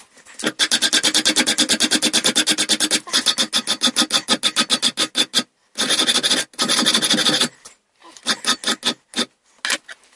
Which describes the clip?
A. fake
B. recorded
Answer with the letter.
B